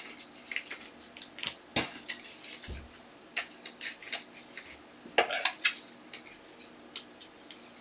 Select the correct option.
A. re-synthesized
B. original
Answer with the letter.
B